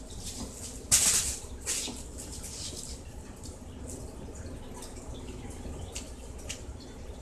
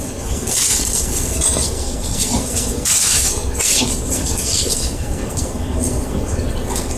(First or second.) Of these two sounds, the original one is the first